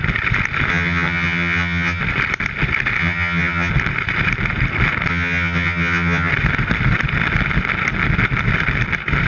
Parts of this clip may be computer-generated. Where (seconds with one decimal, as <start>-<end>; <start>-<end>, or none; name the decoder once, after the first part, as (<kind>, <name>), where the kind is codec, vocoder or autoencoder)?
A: 0.7-2.0 (vocoder, HiFi-GAN); 3.0-3.7; 5.1-6.3